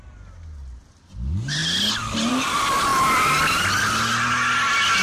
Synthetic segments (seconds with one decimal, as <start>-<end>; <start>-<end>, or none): none